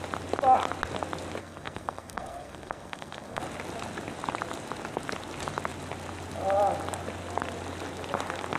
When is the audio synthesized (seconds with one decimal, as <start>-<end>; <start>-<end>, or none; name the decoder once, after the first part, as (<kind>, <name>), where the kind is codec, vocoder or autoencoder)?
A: 1.4-3.4 (codec, SNAC)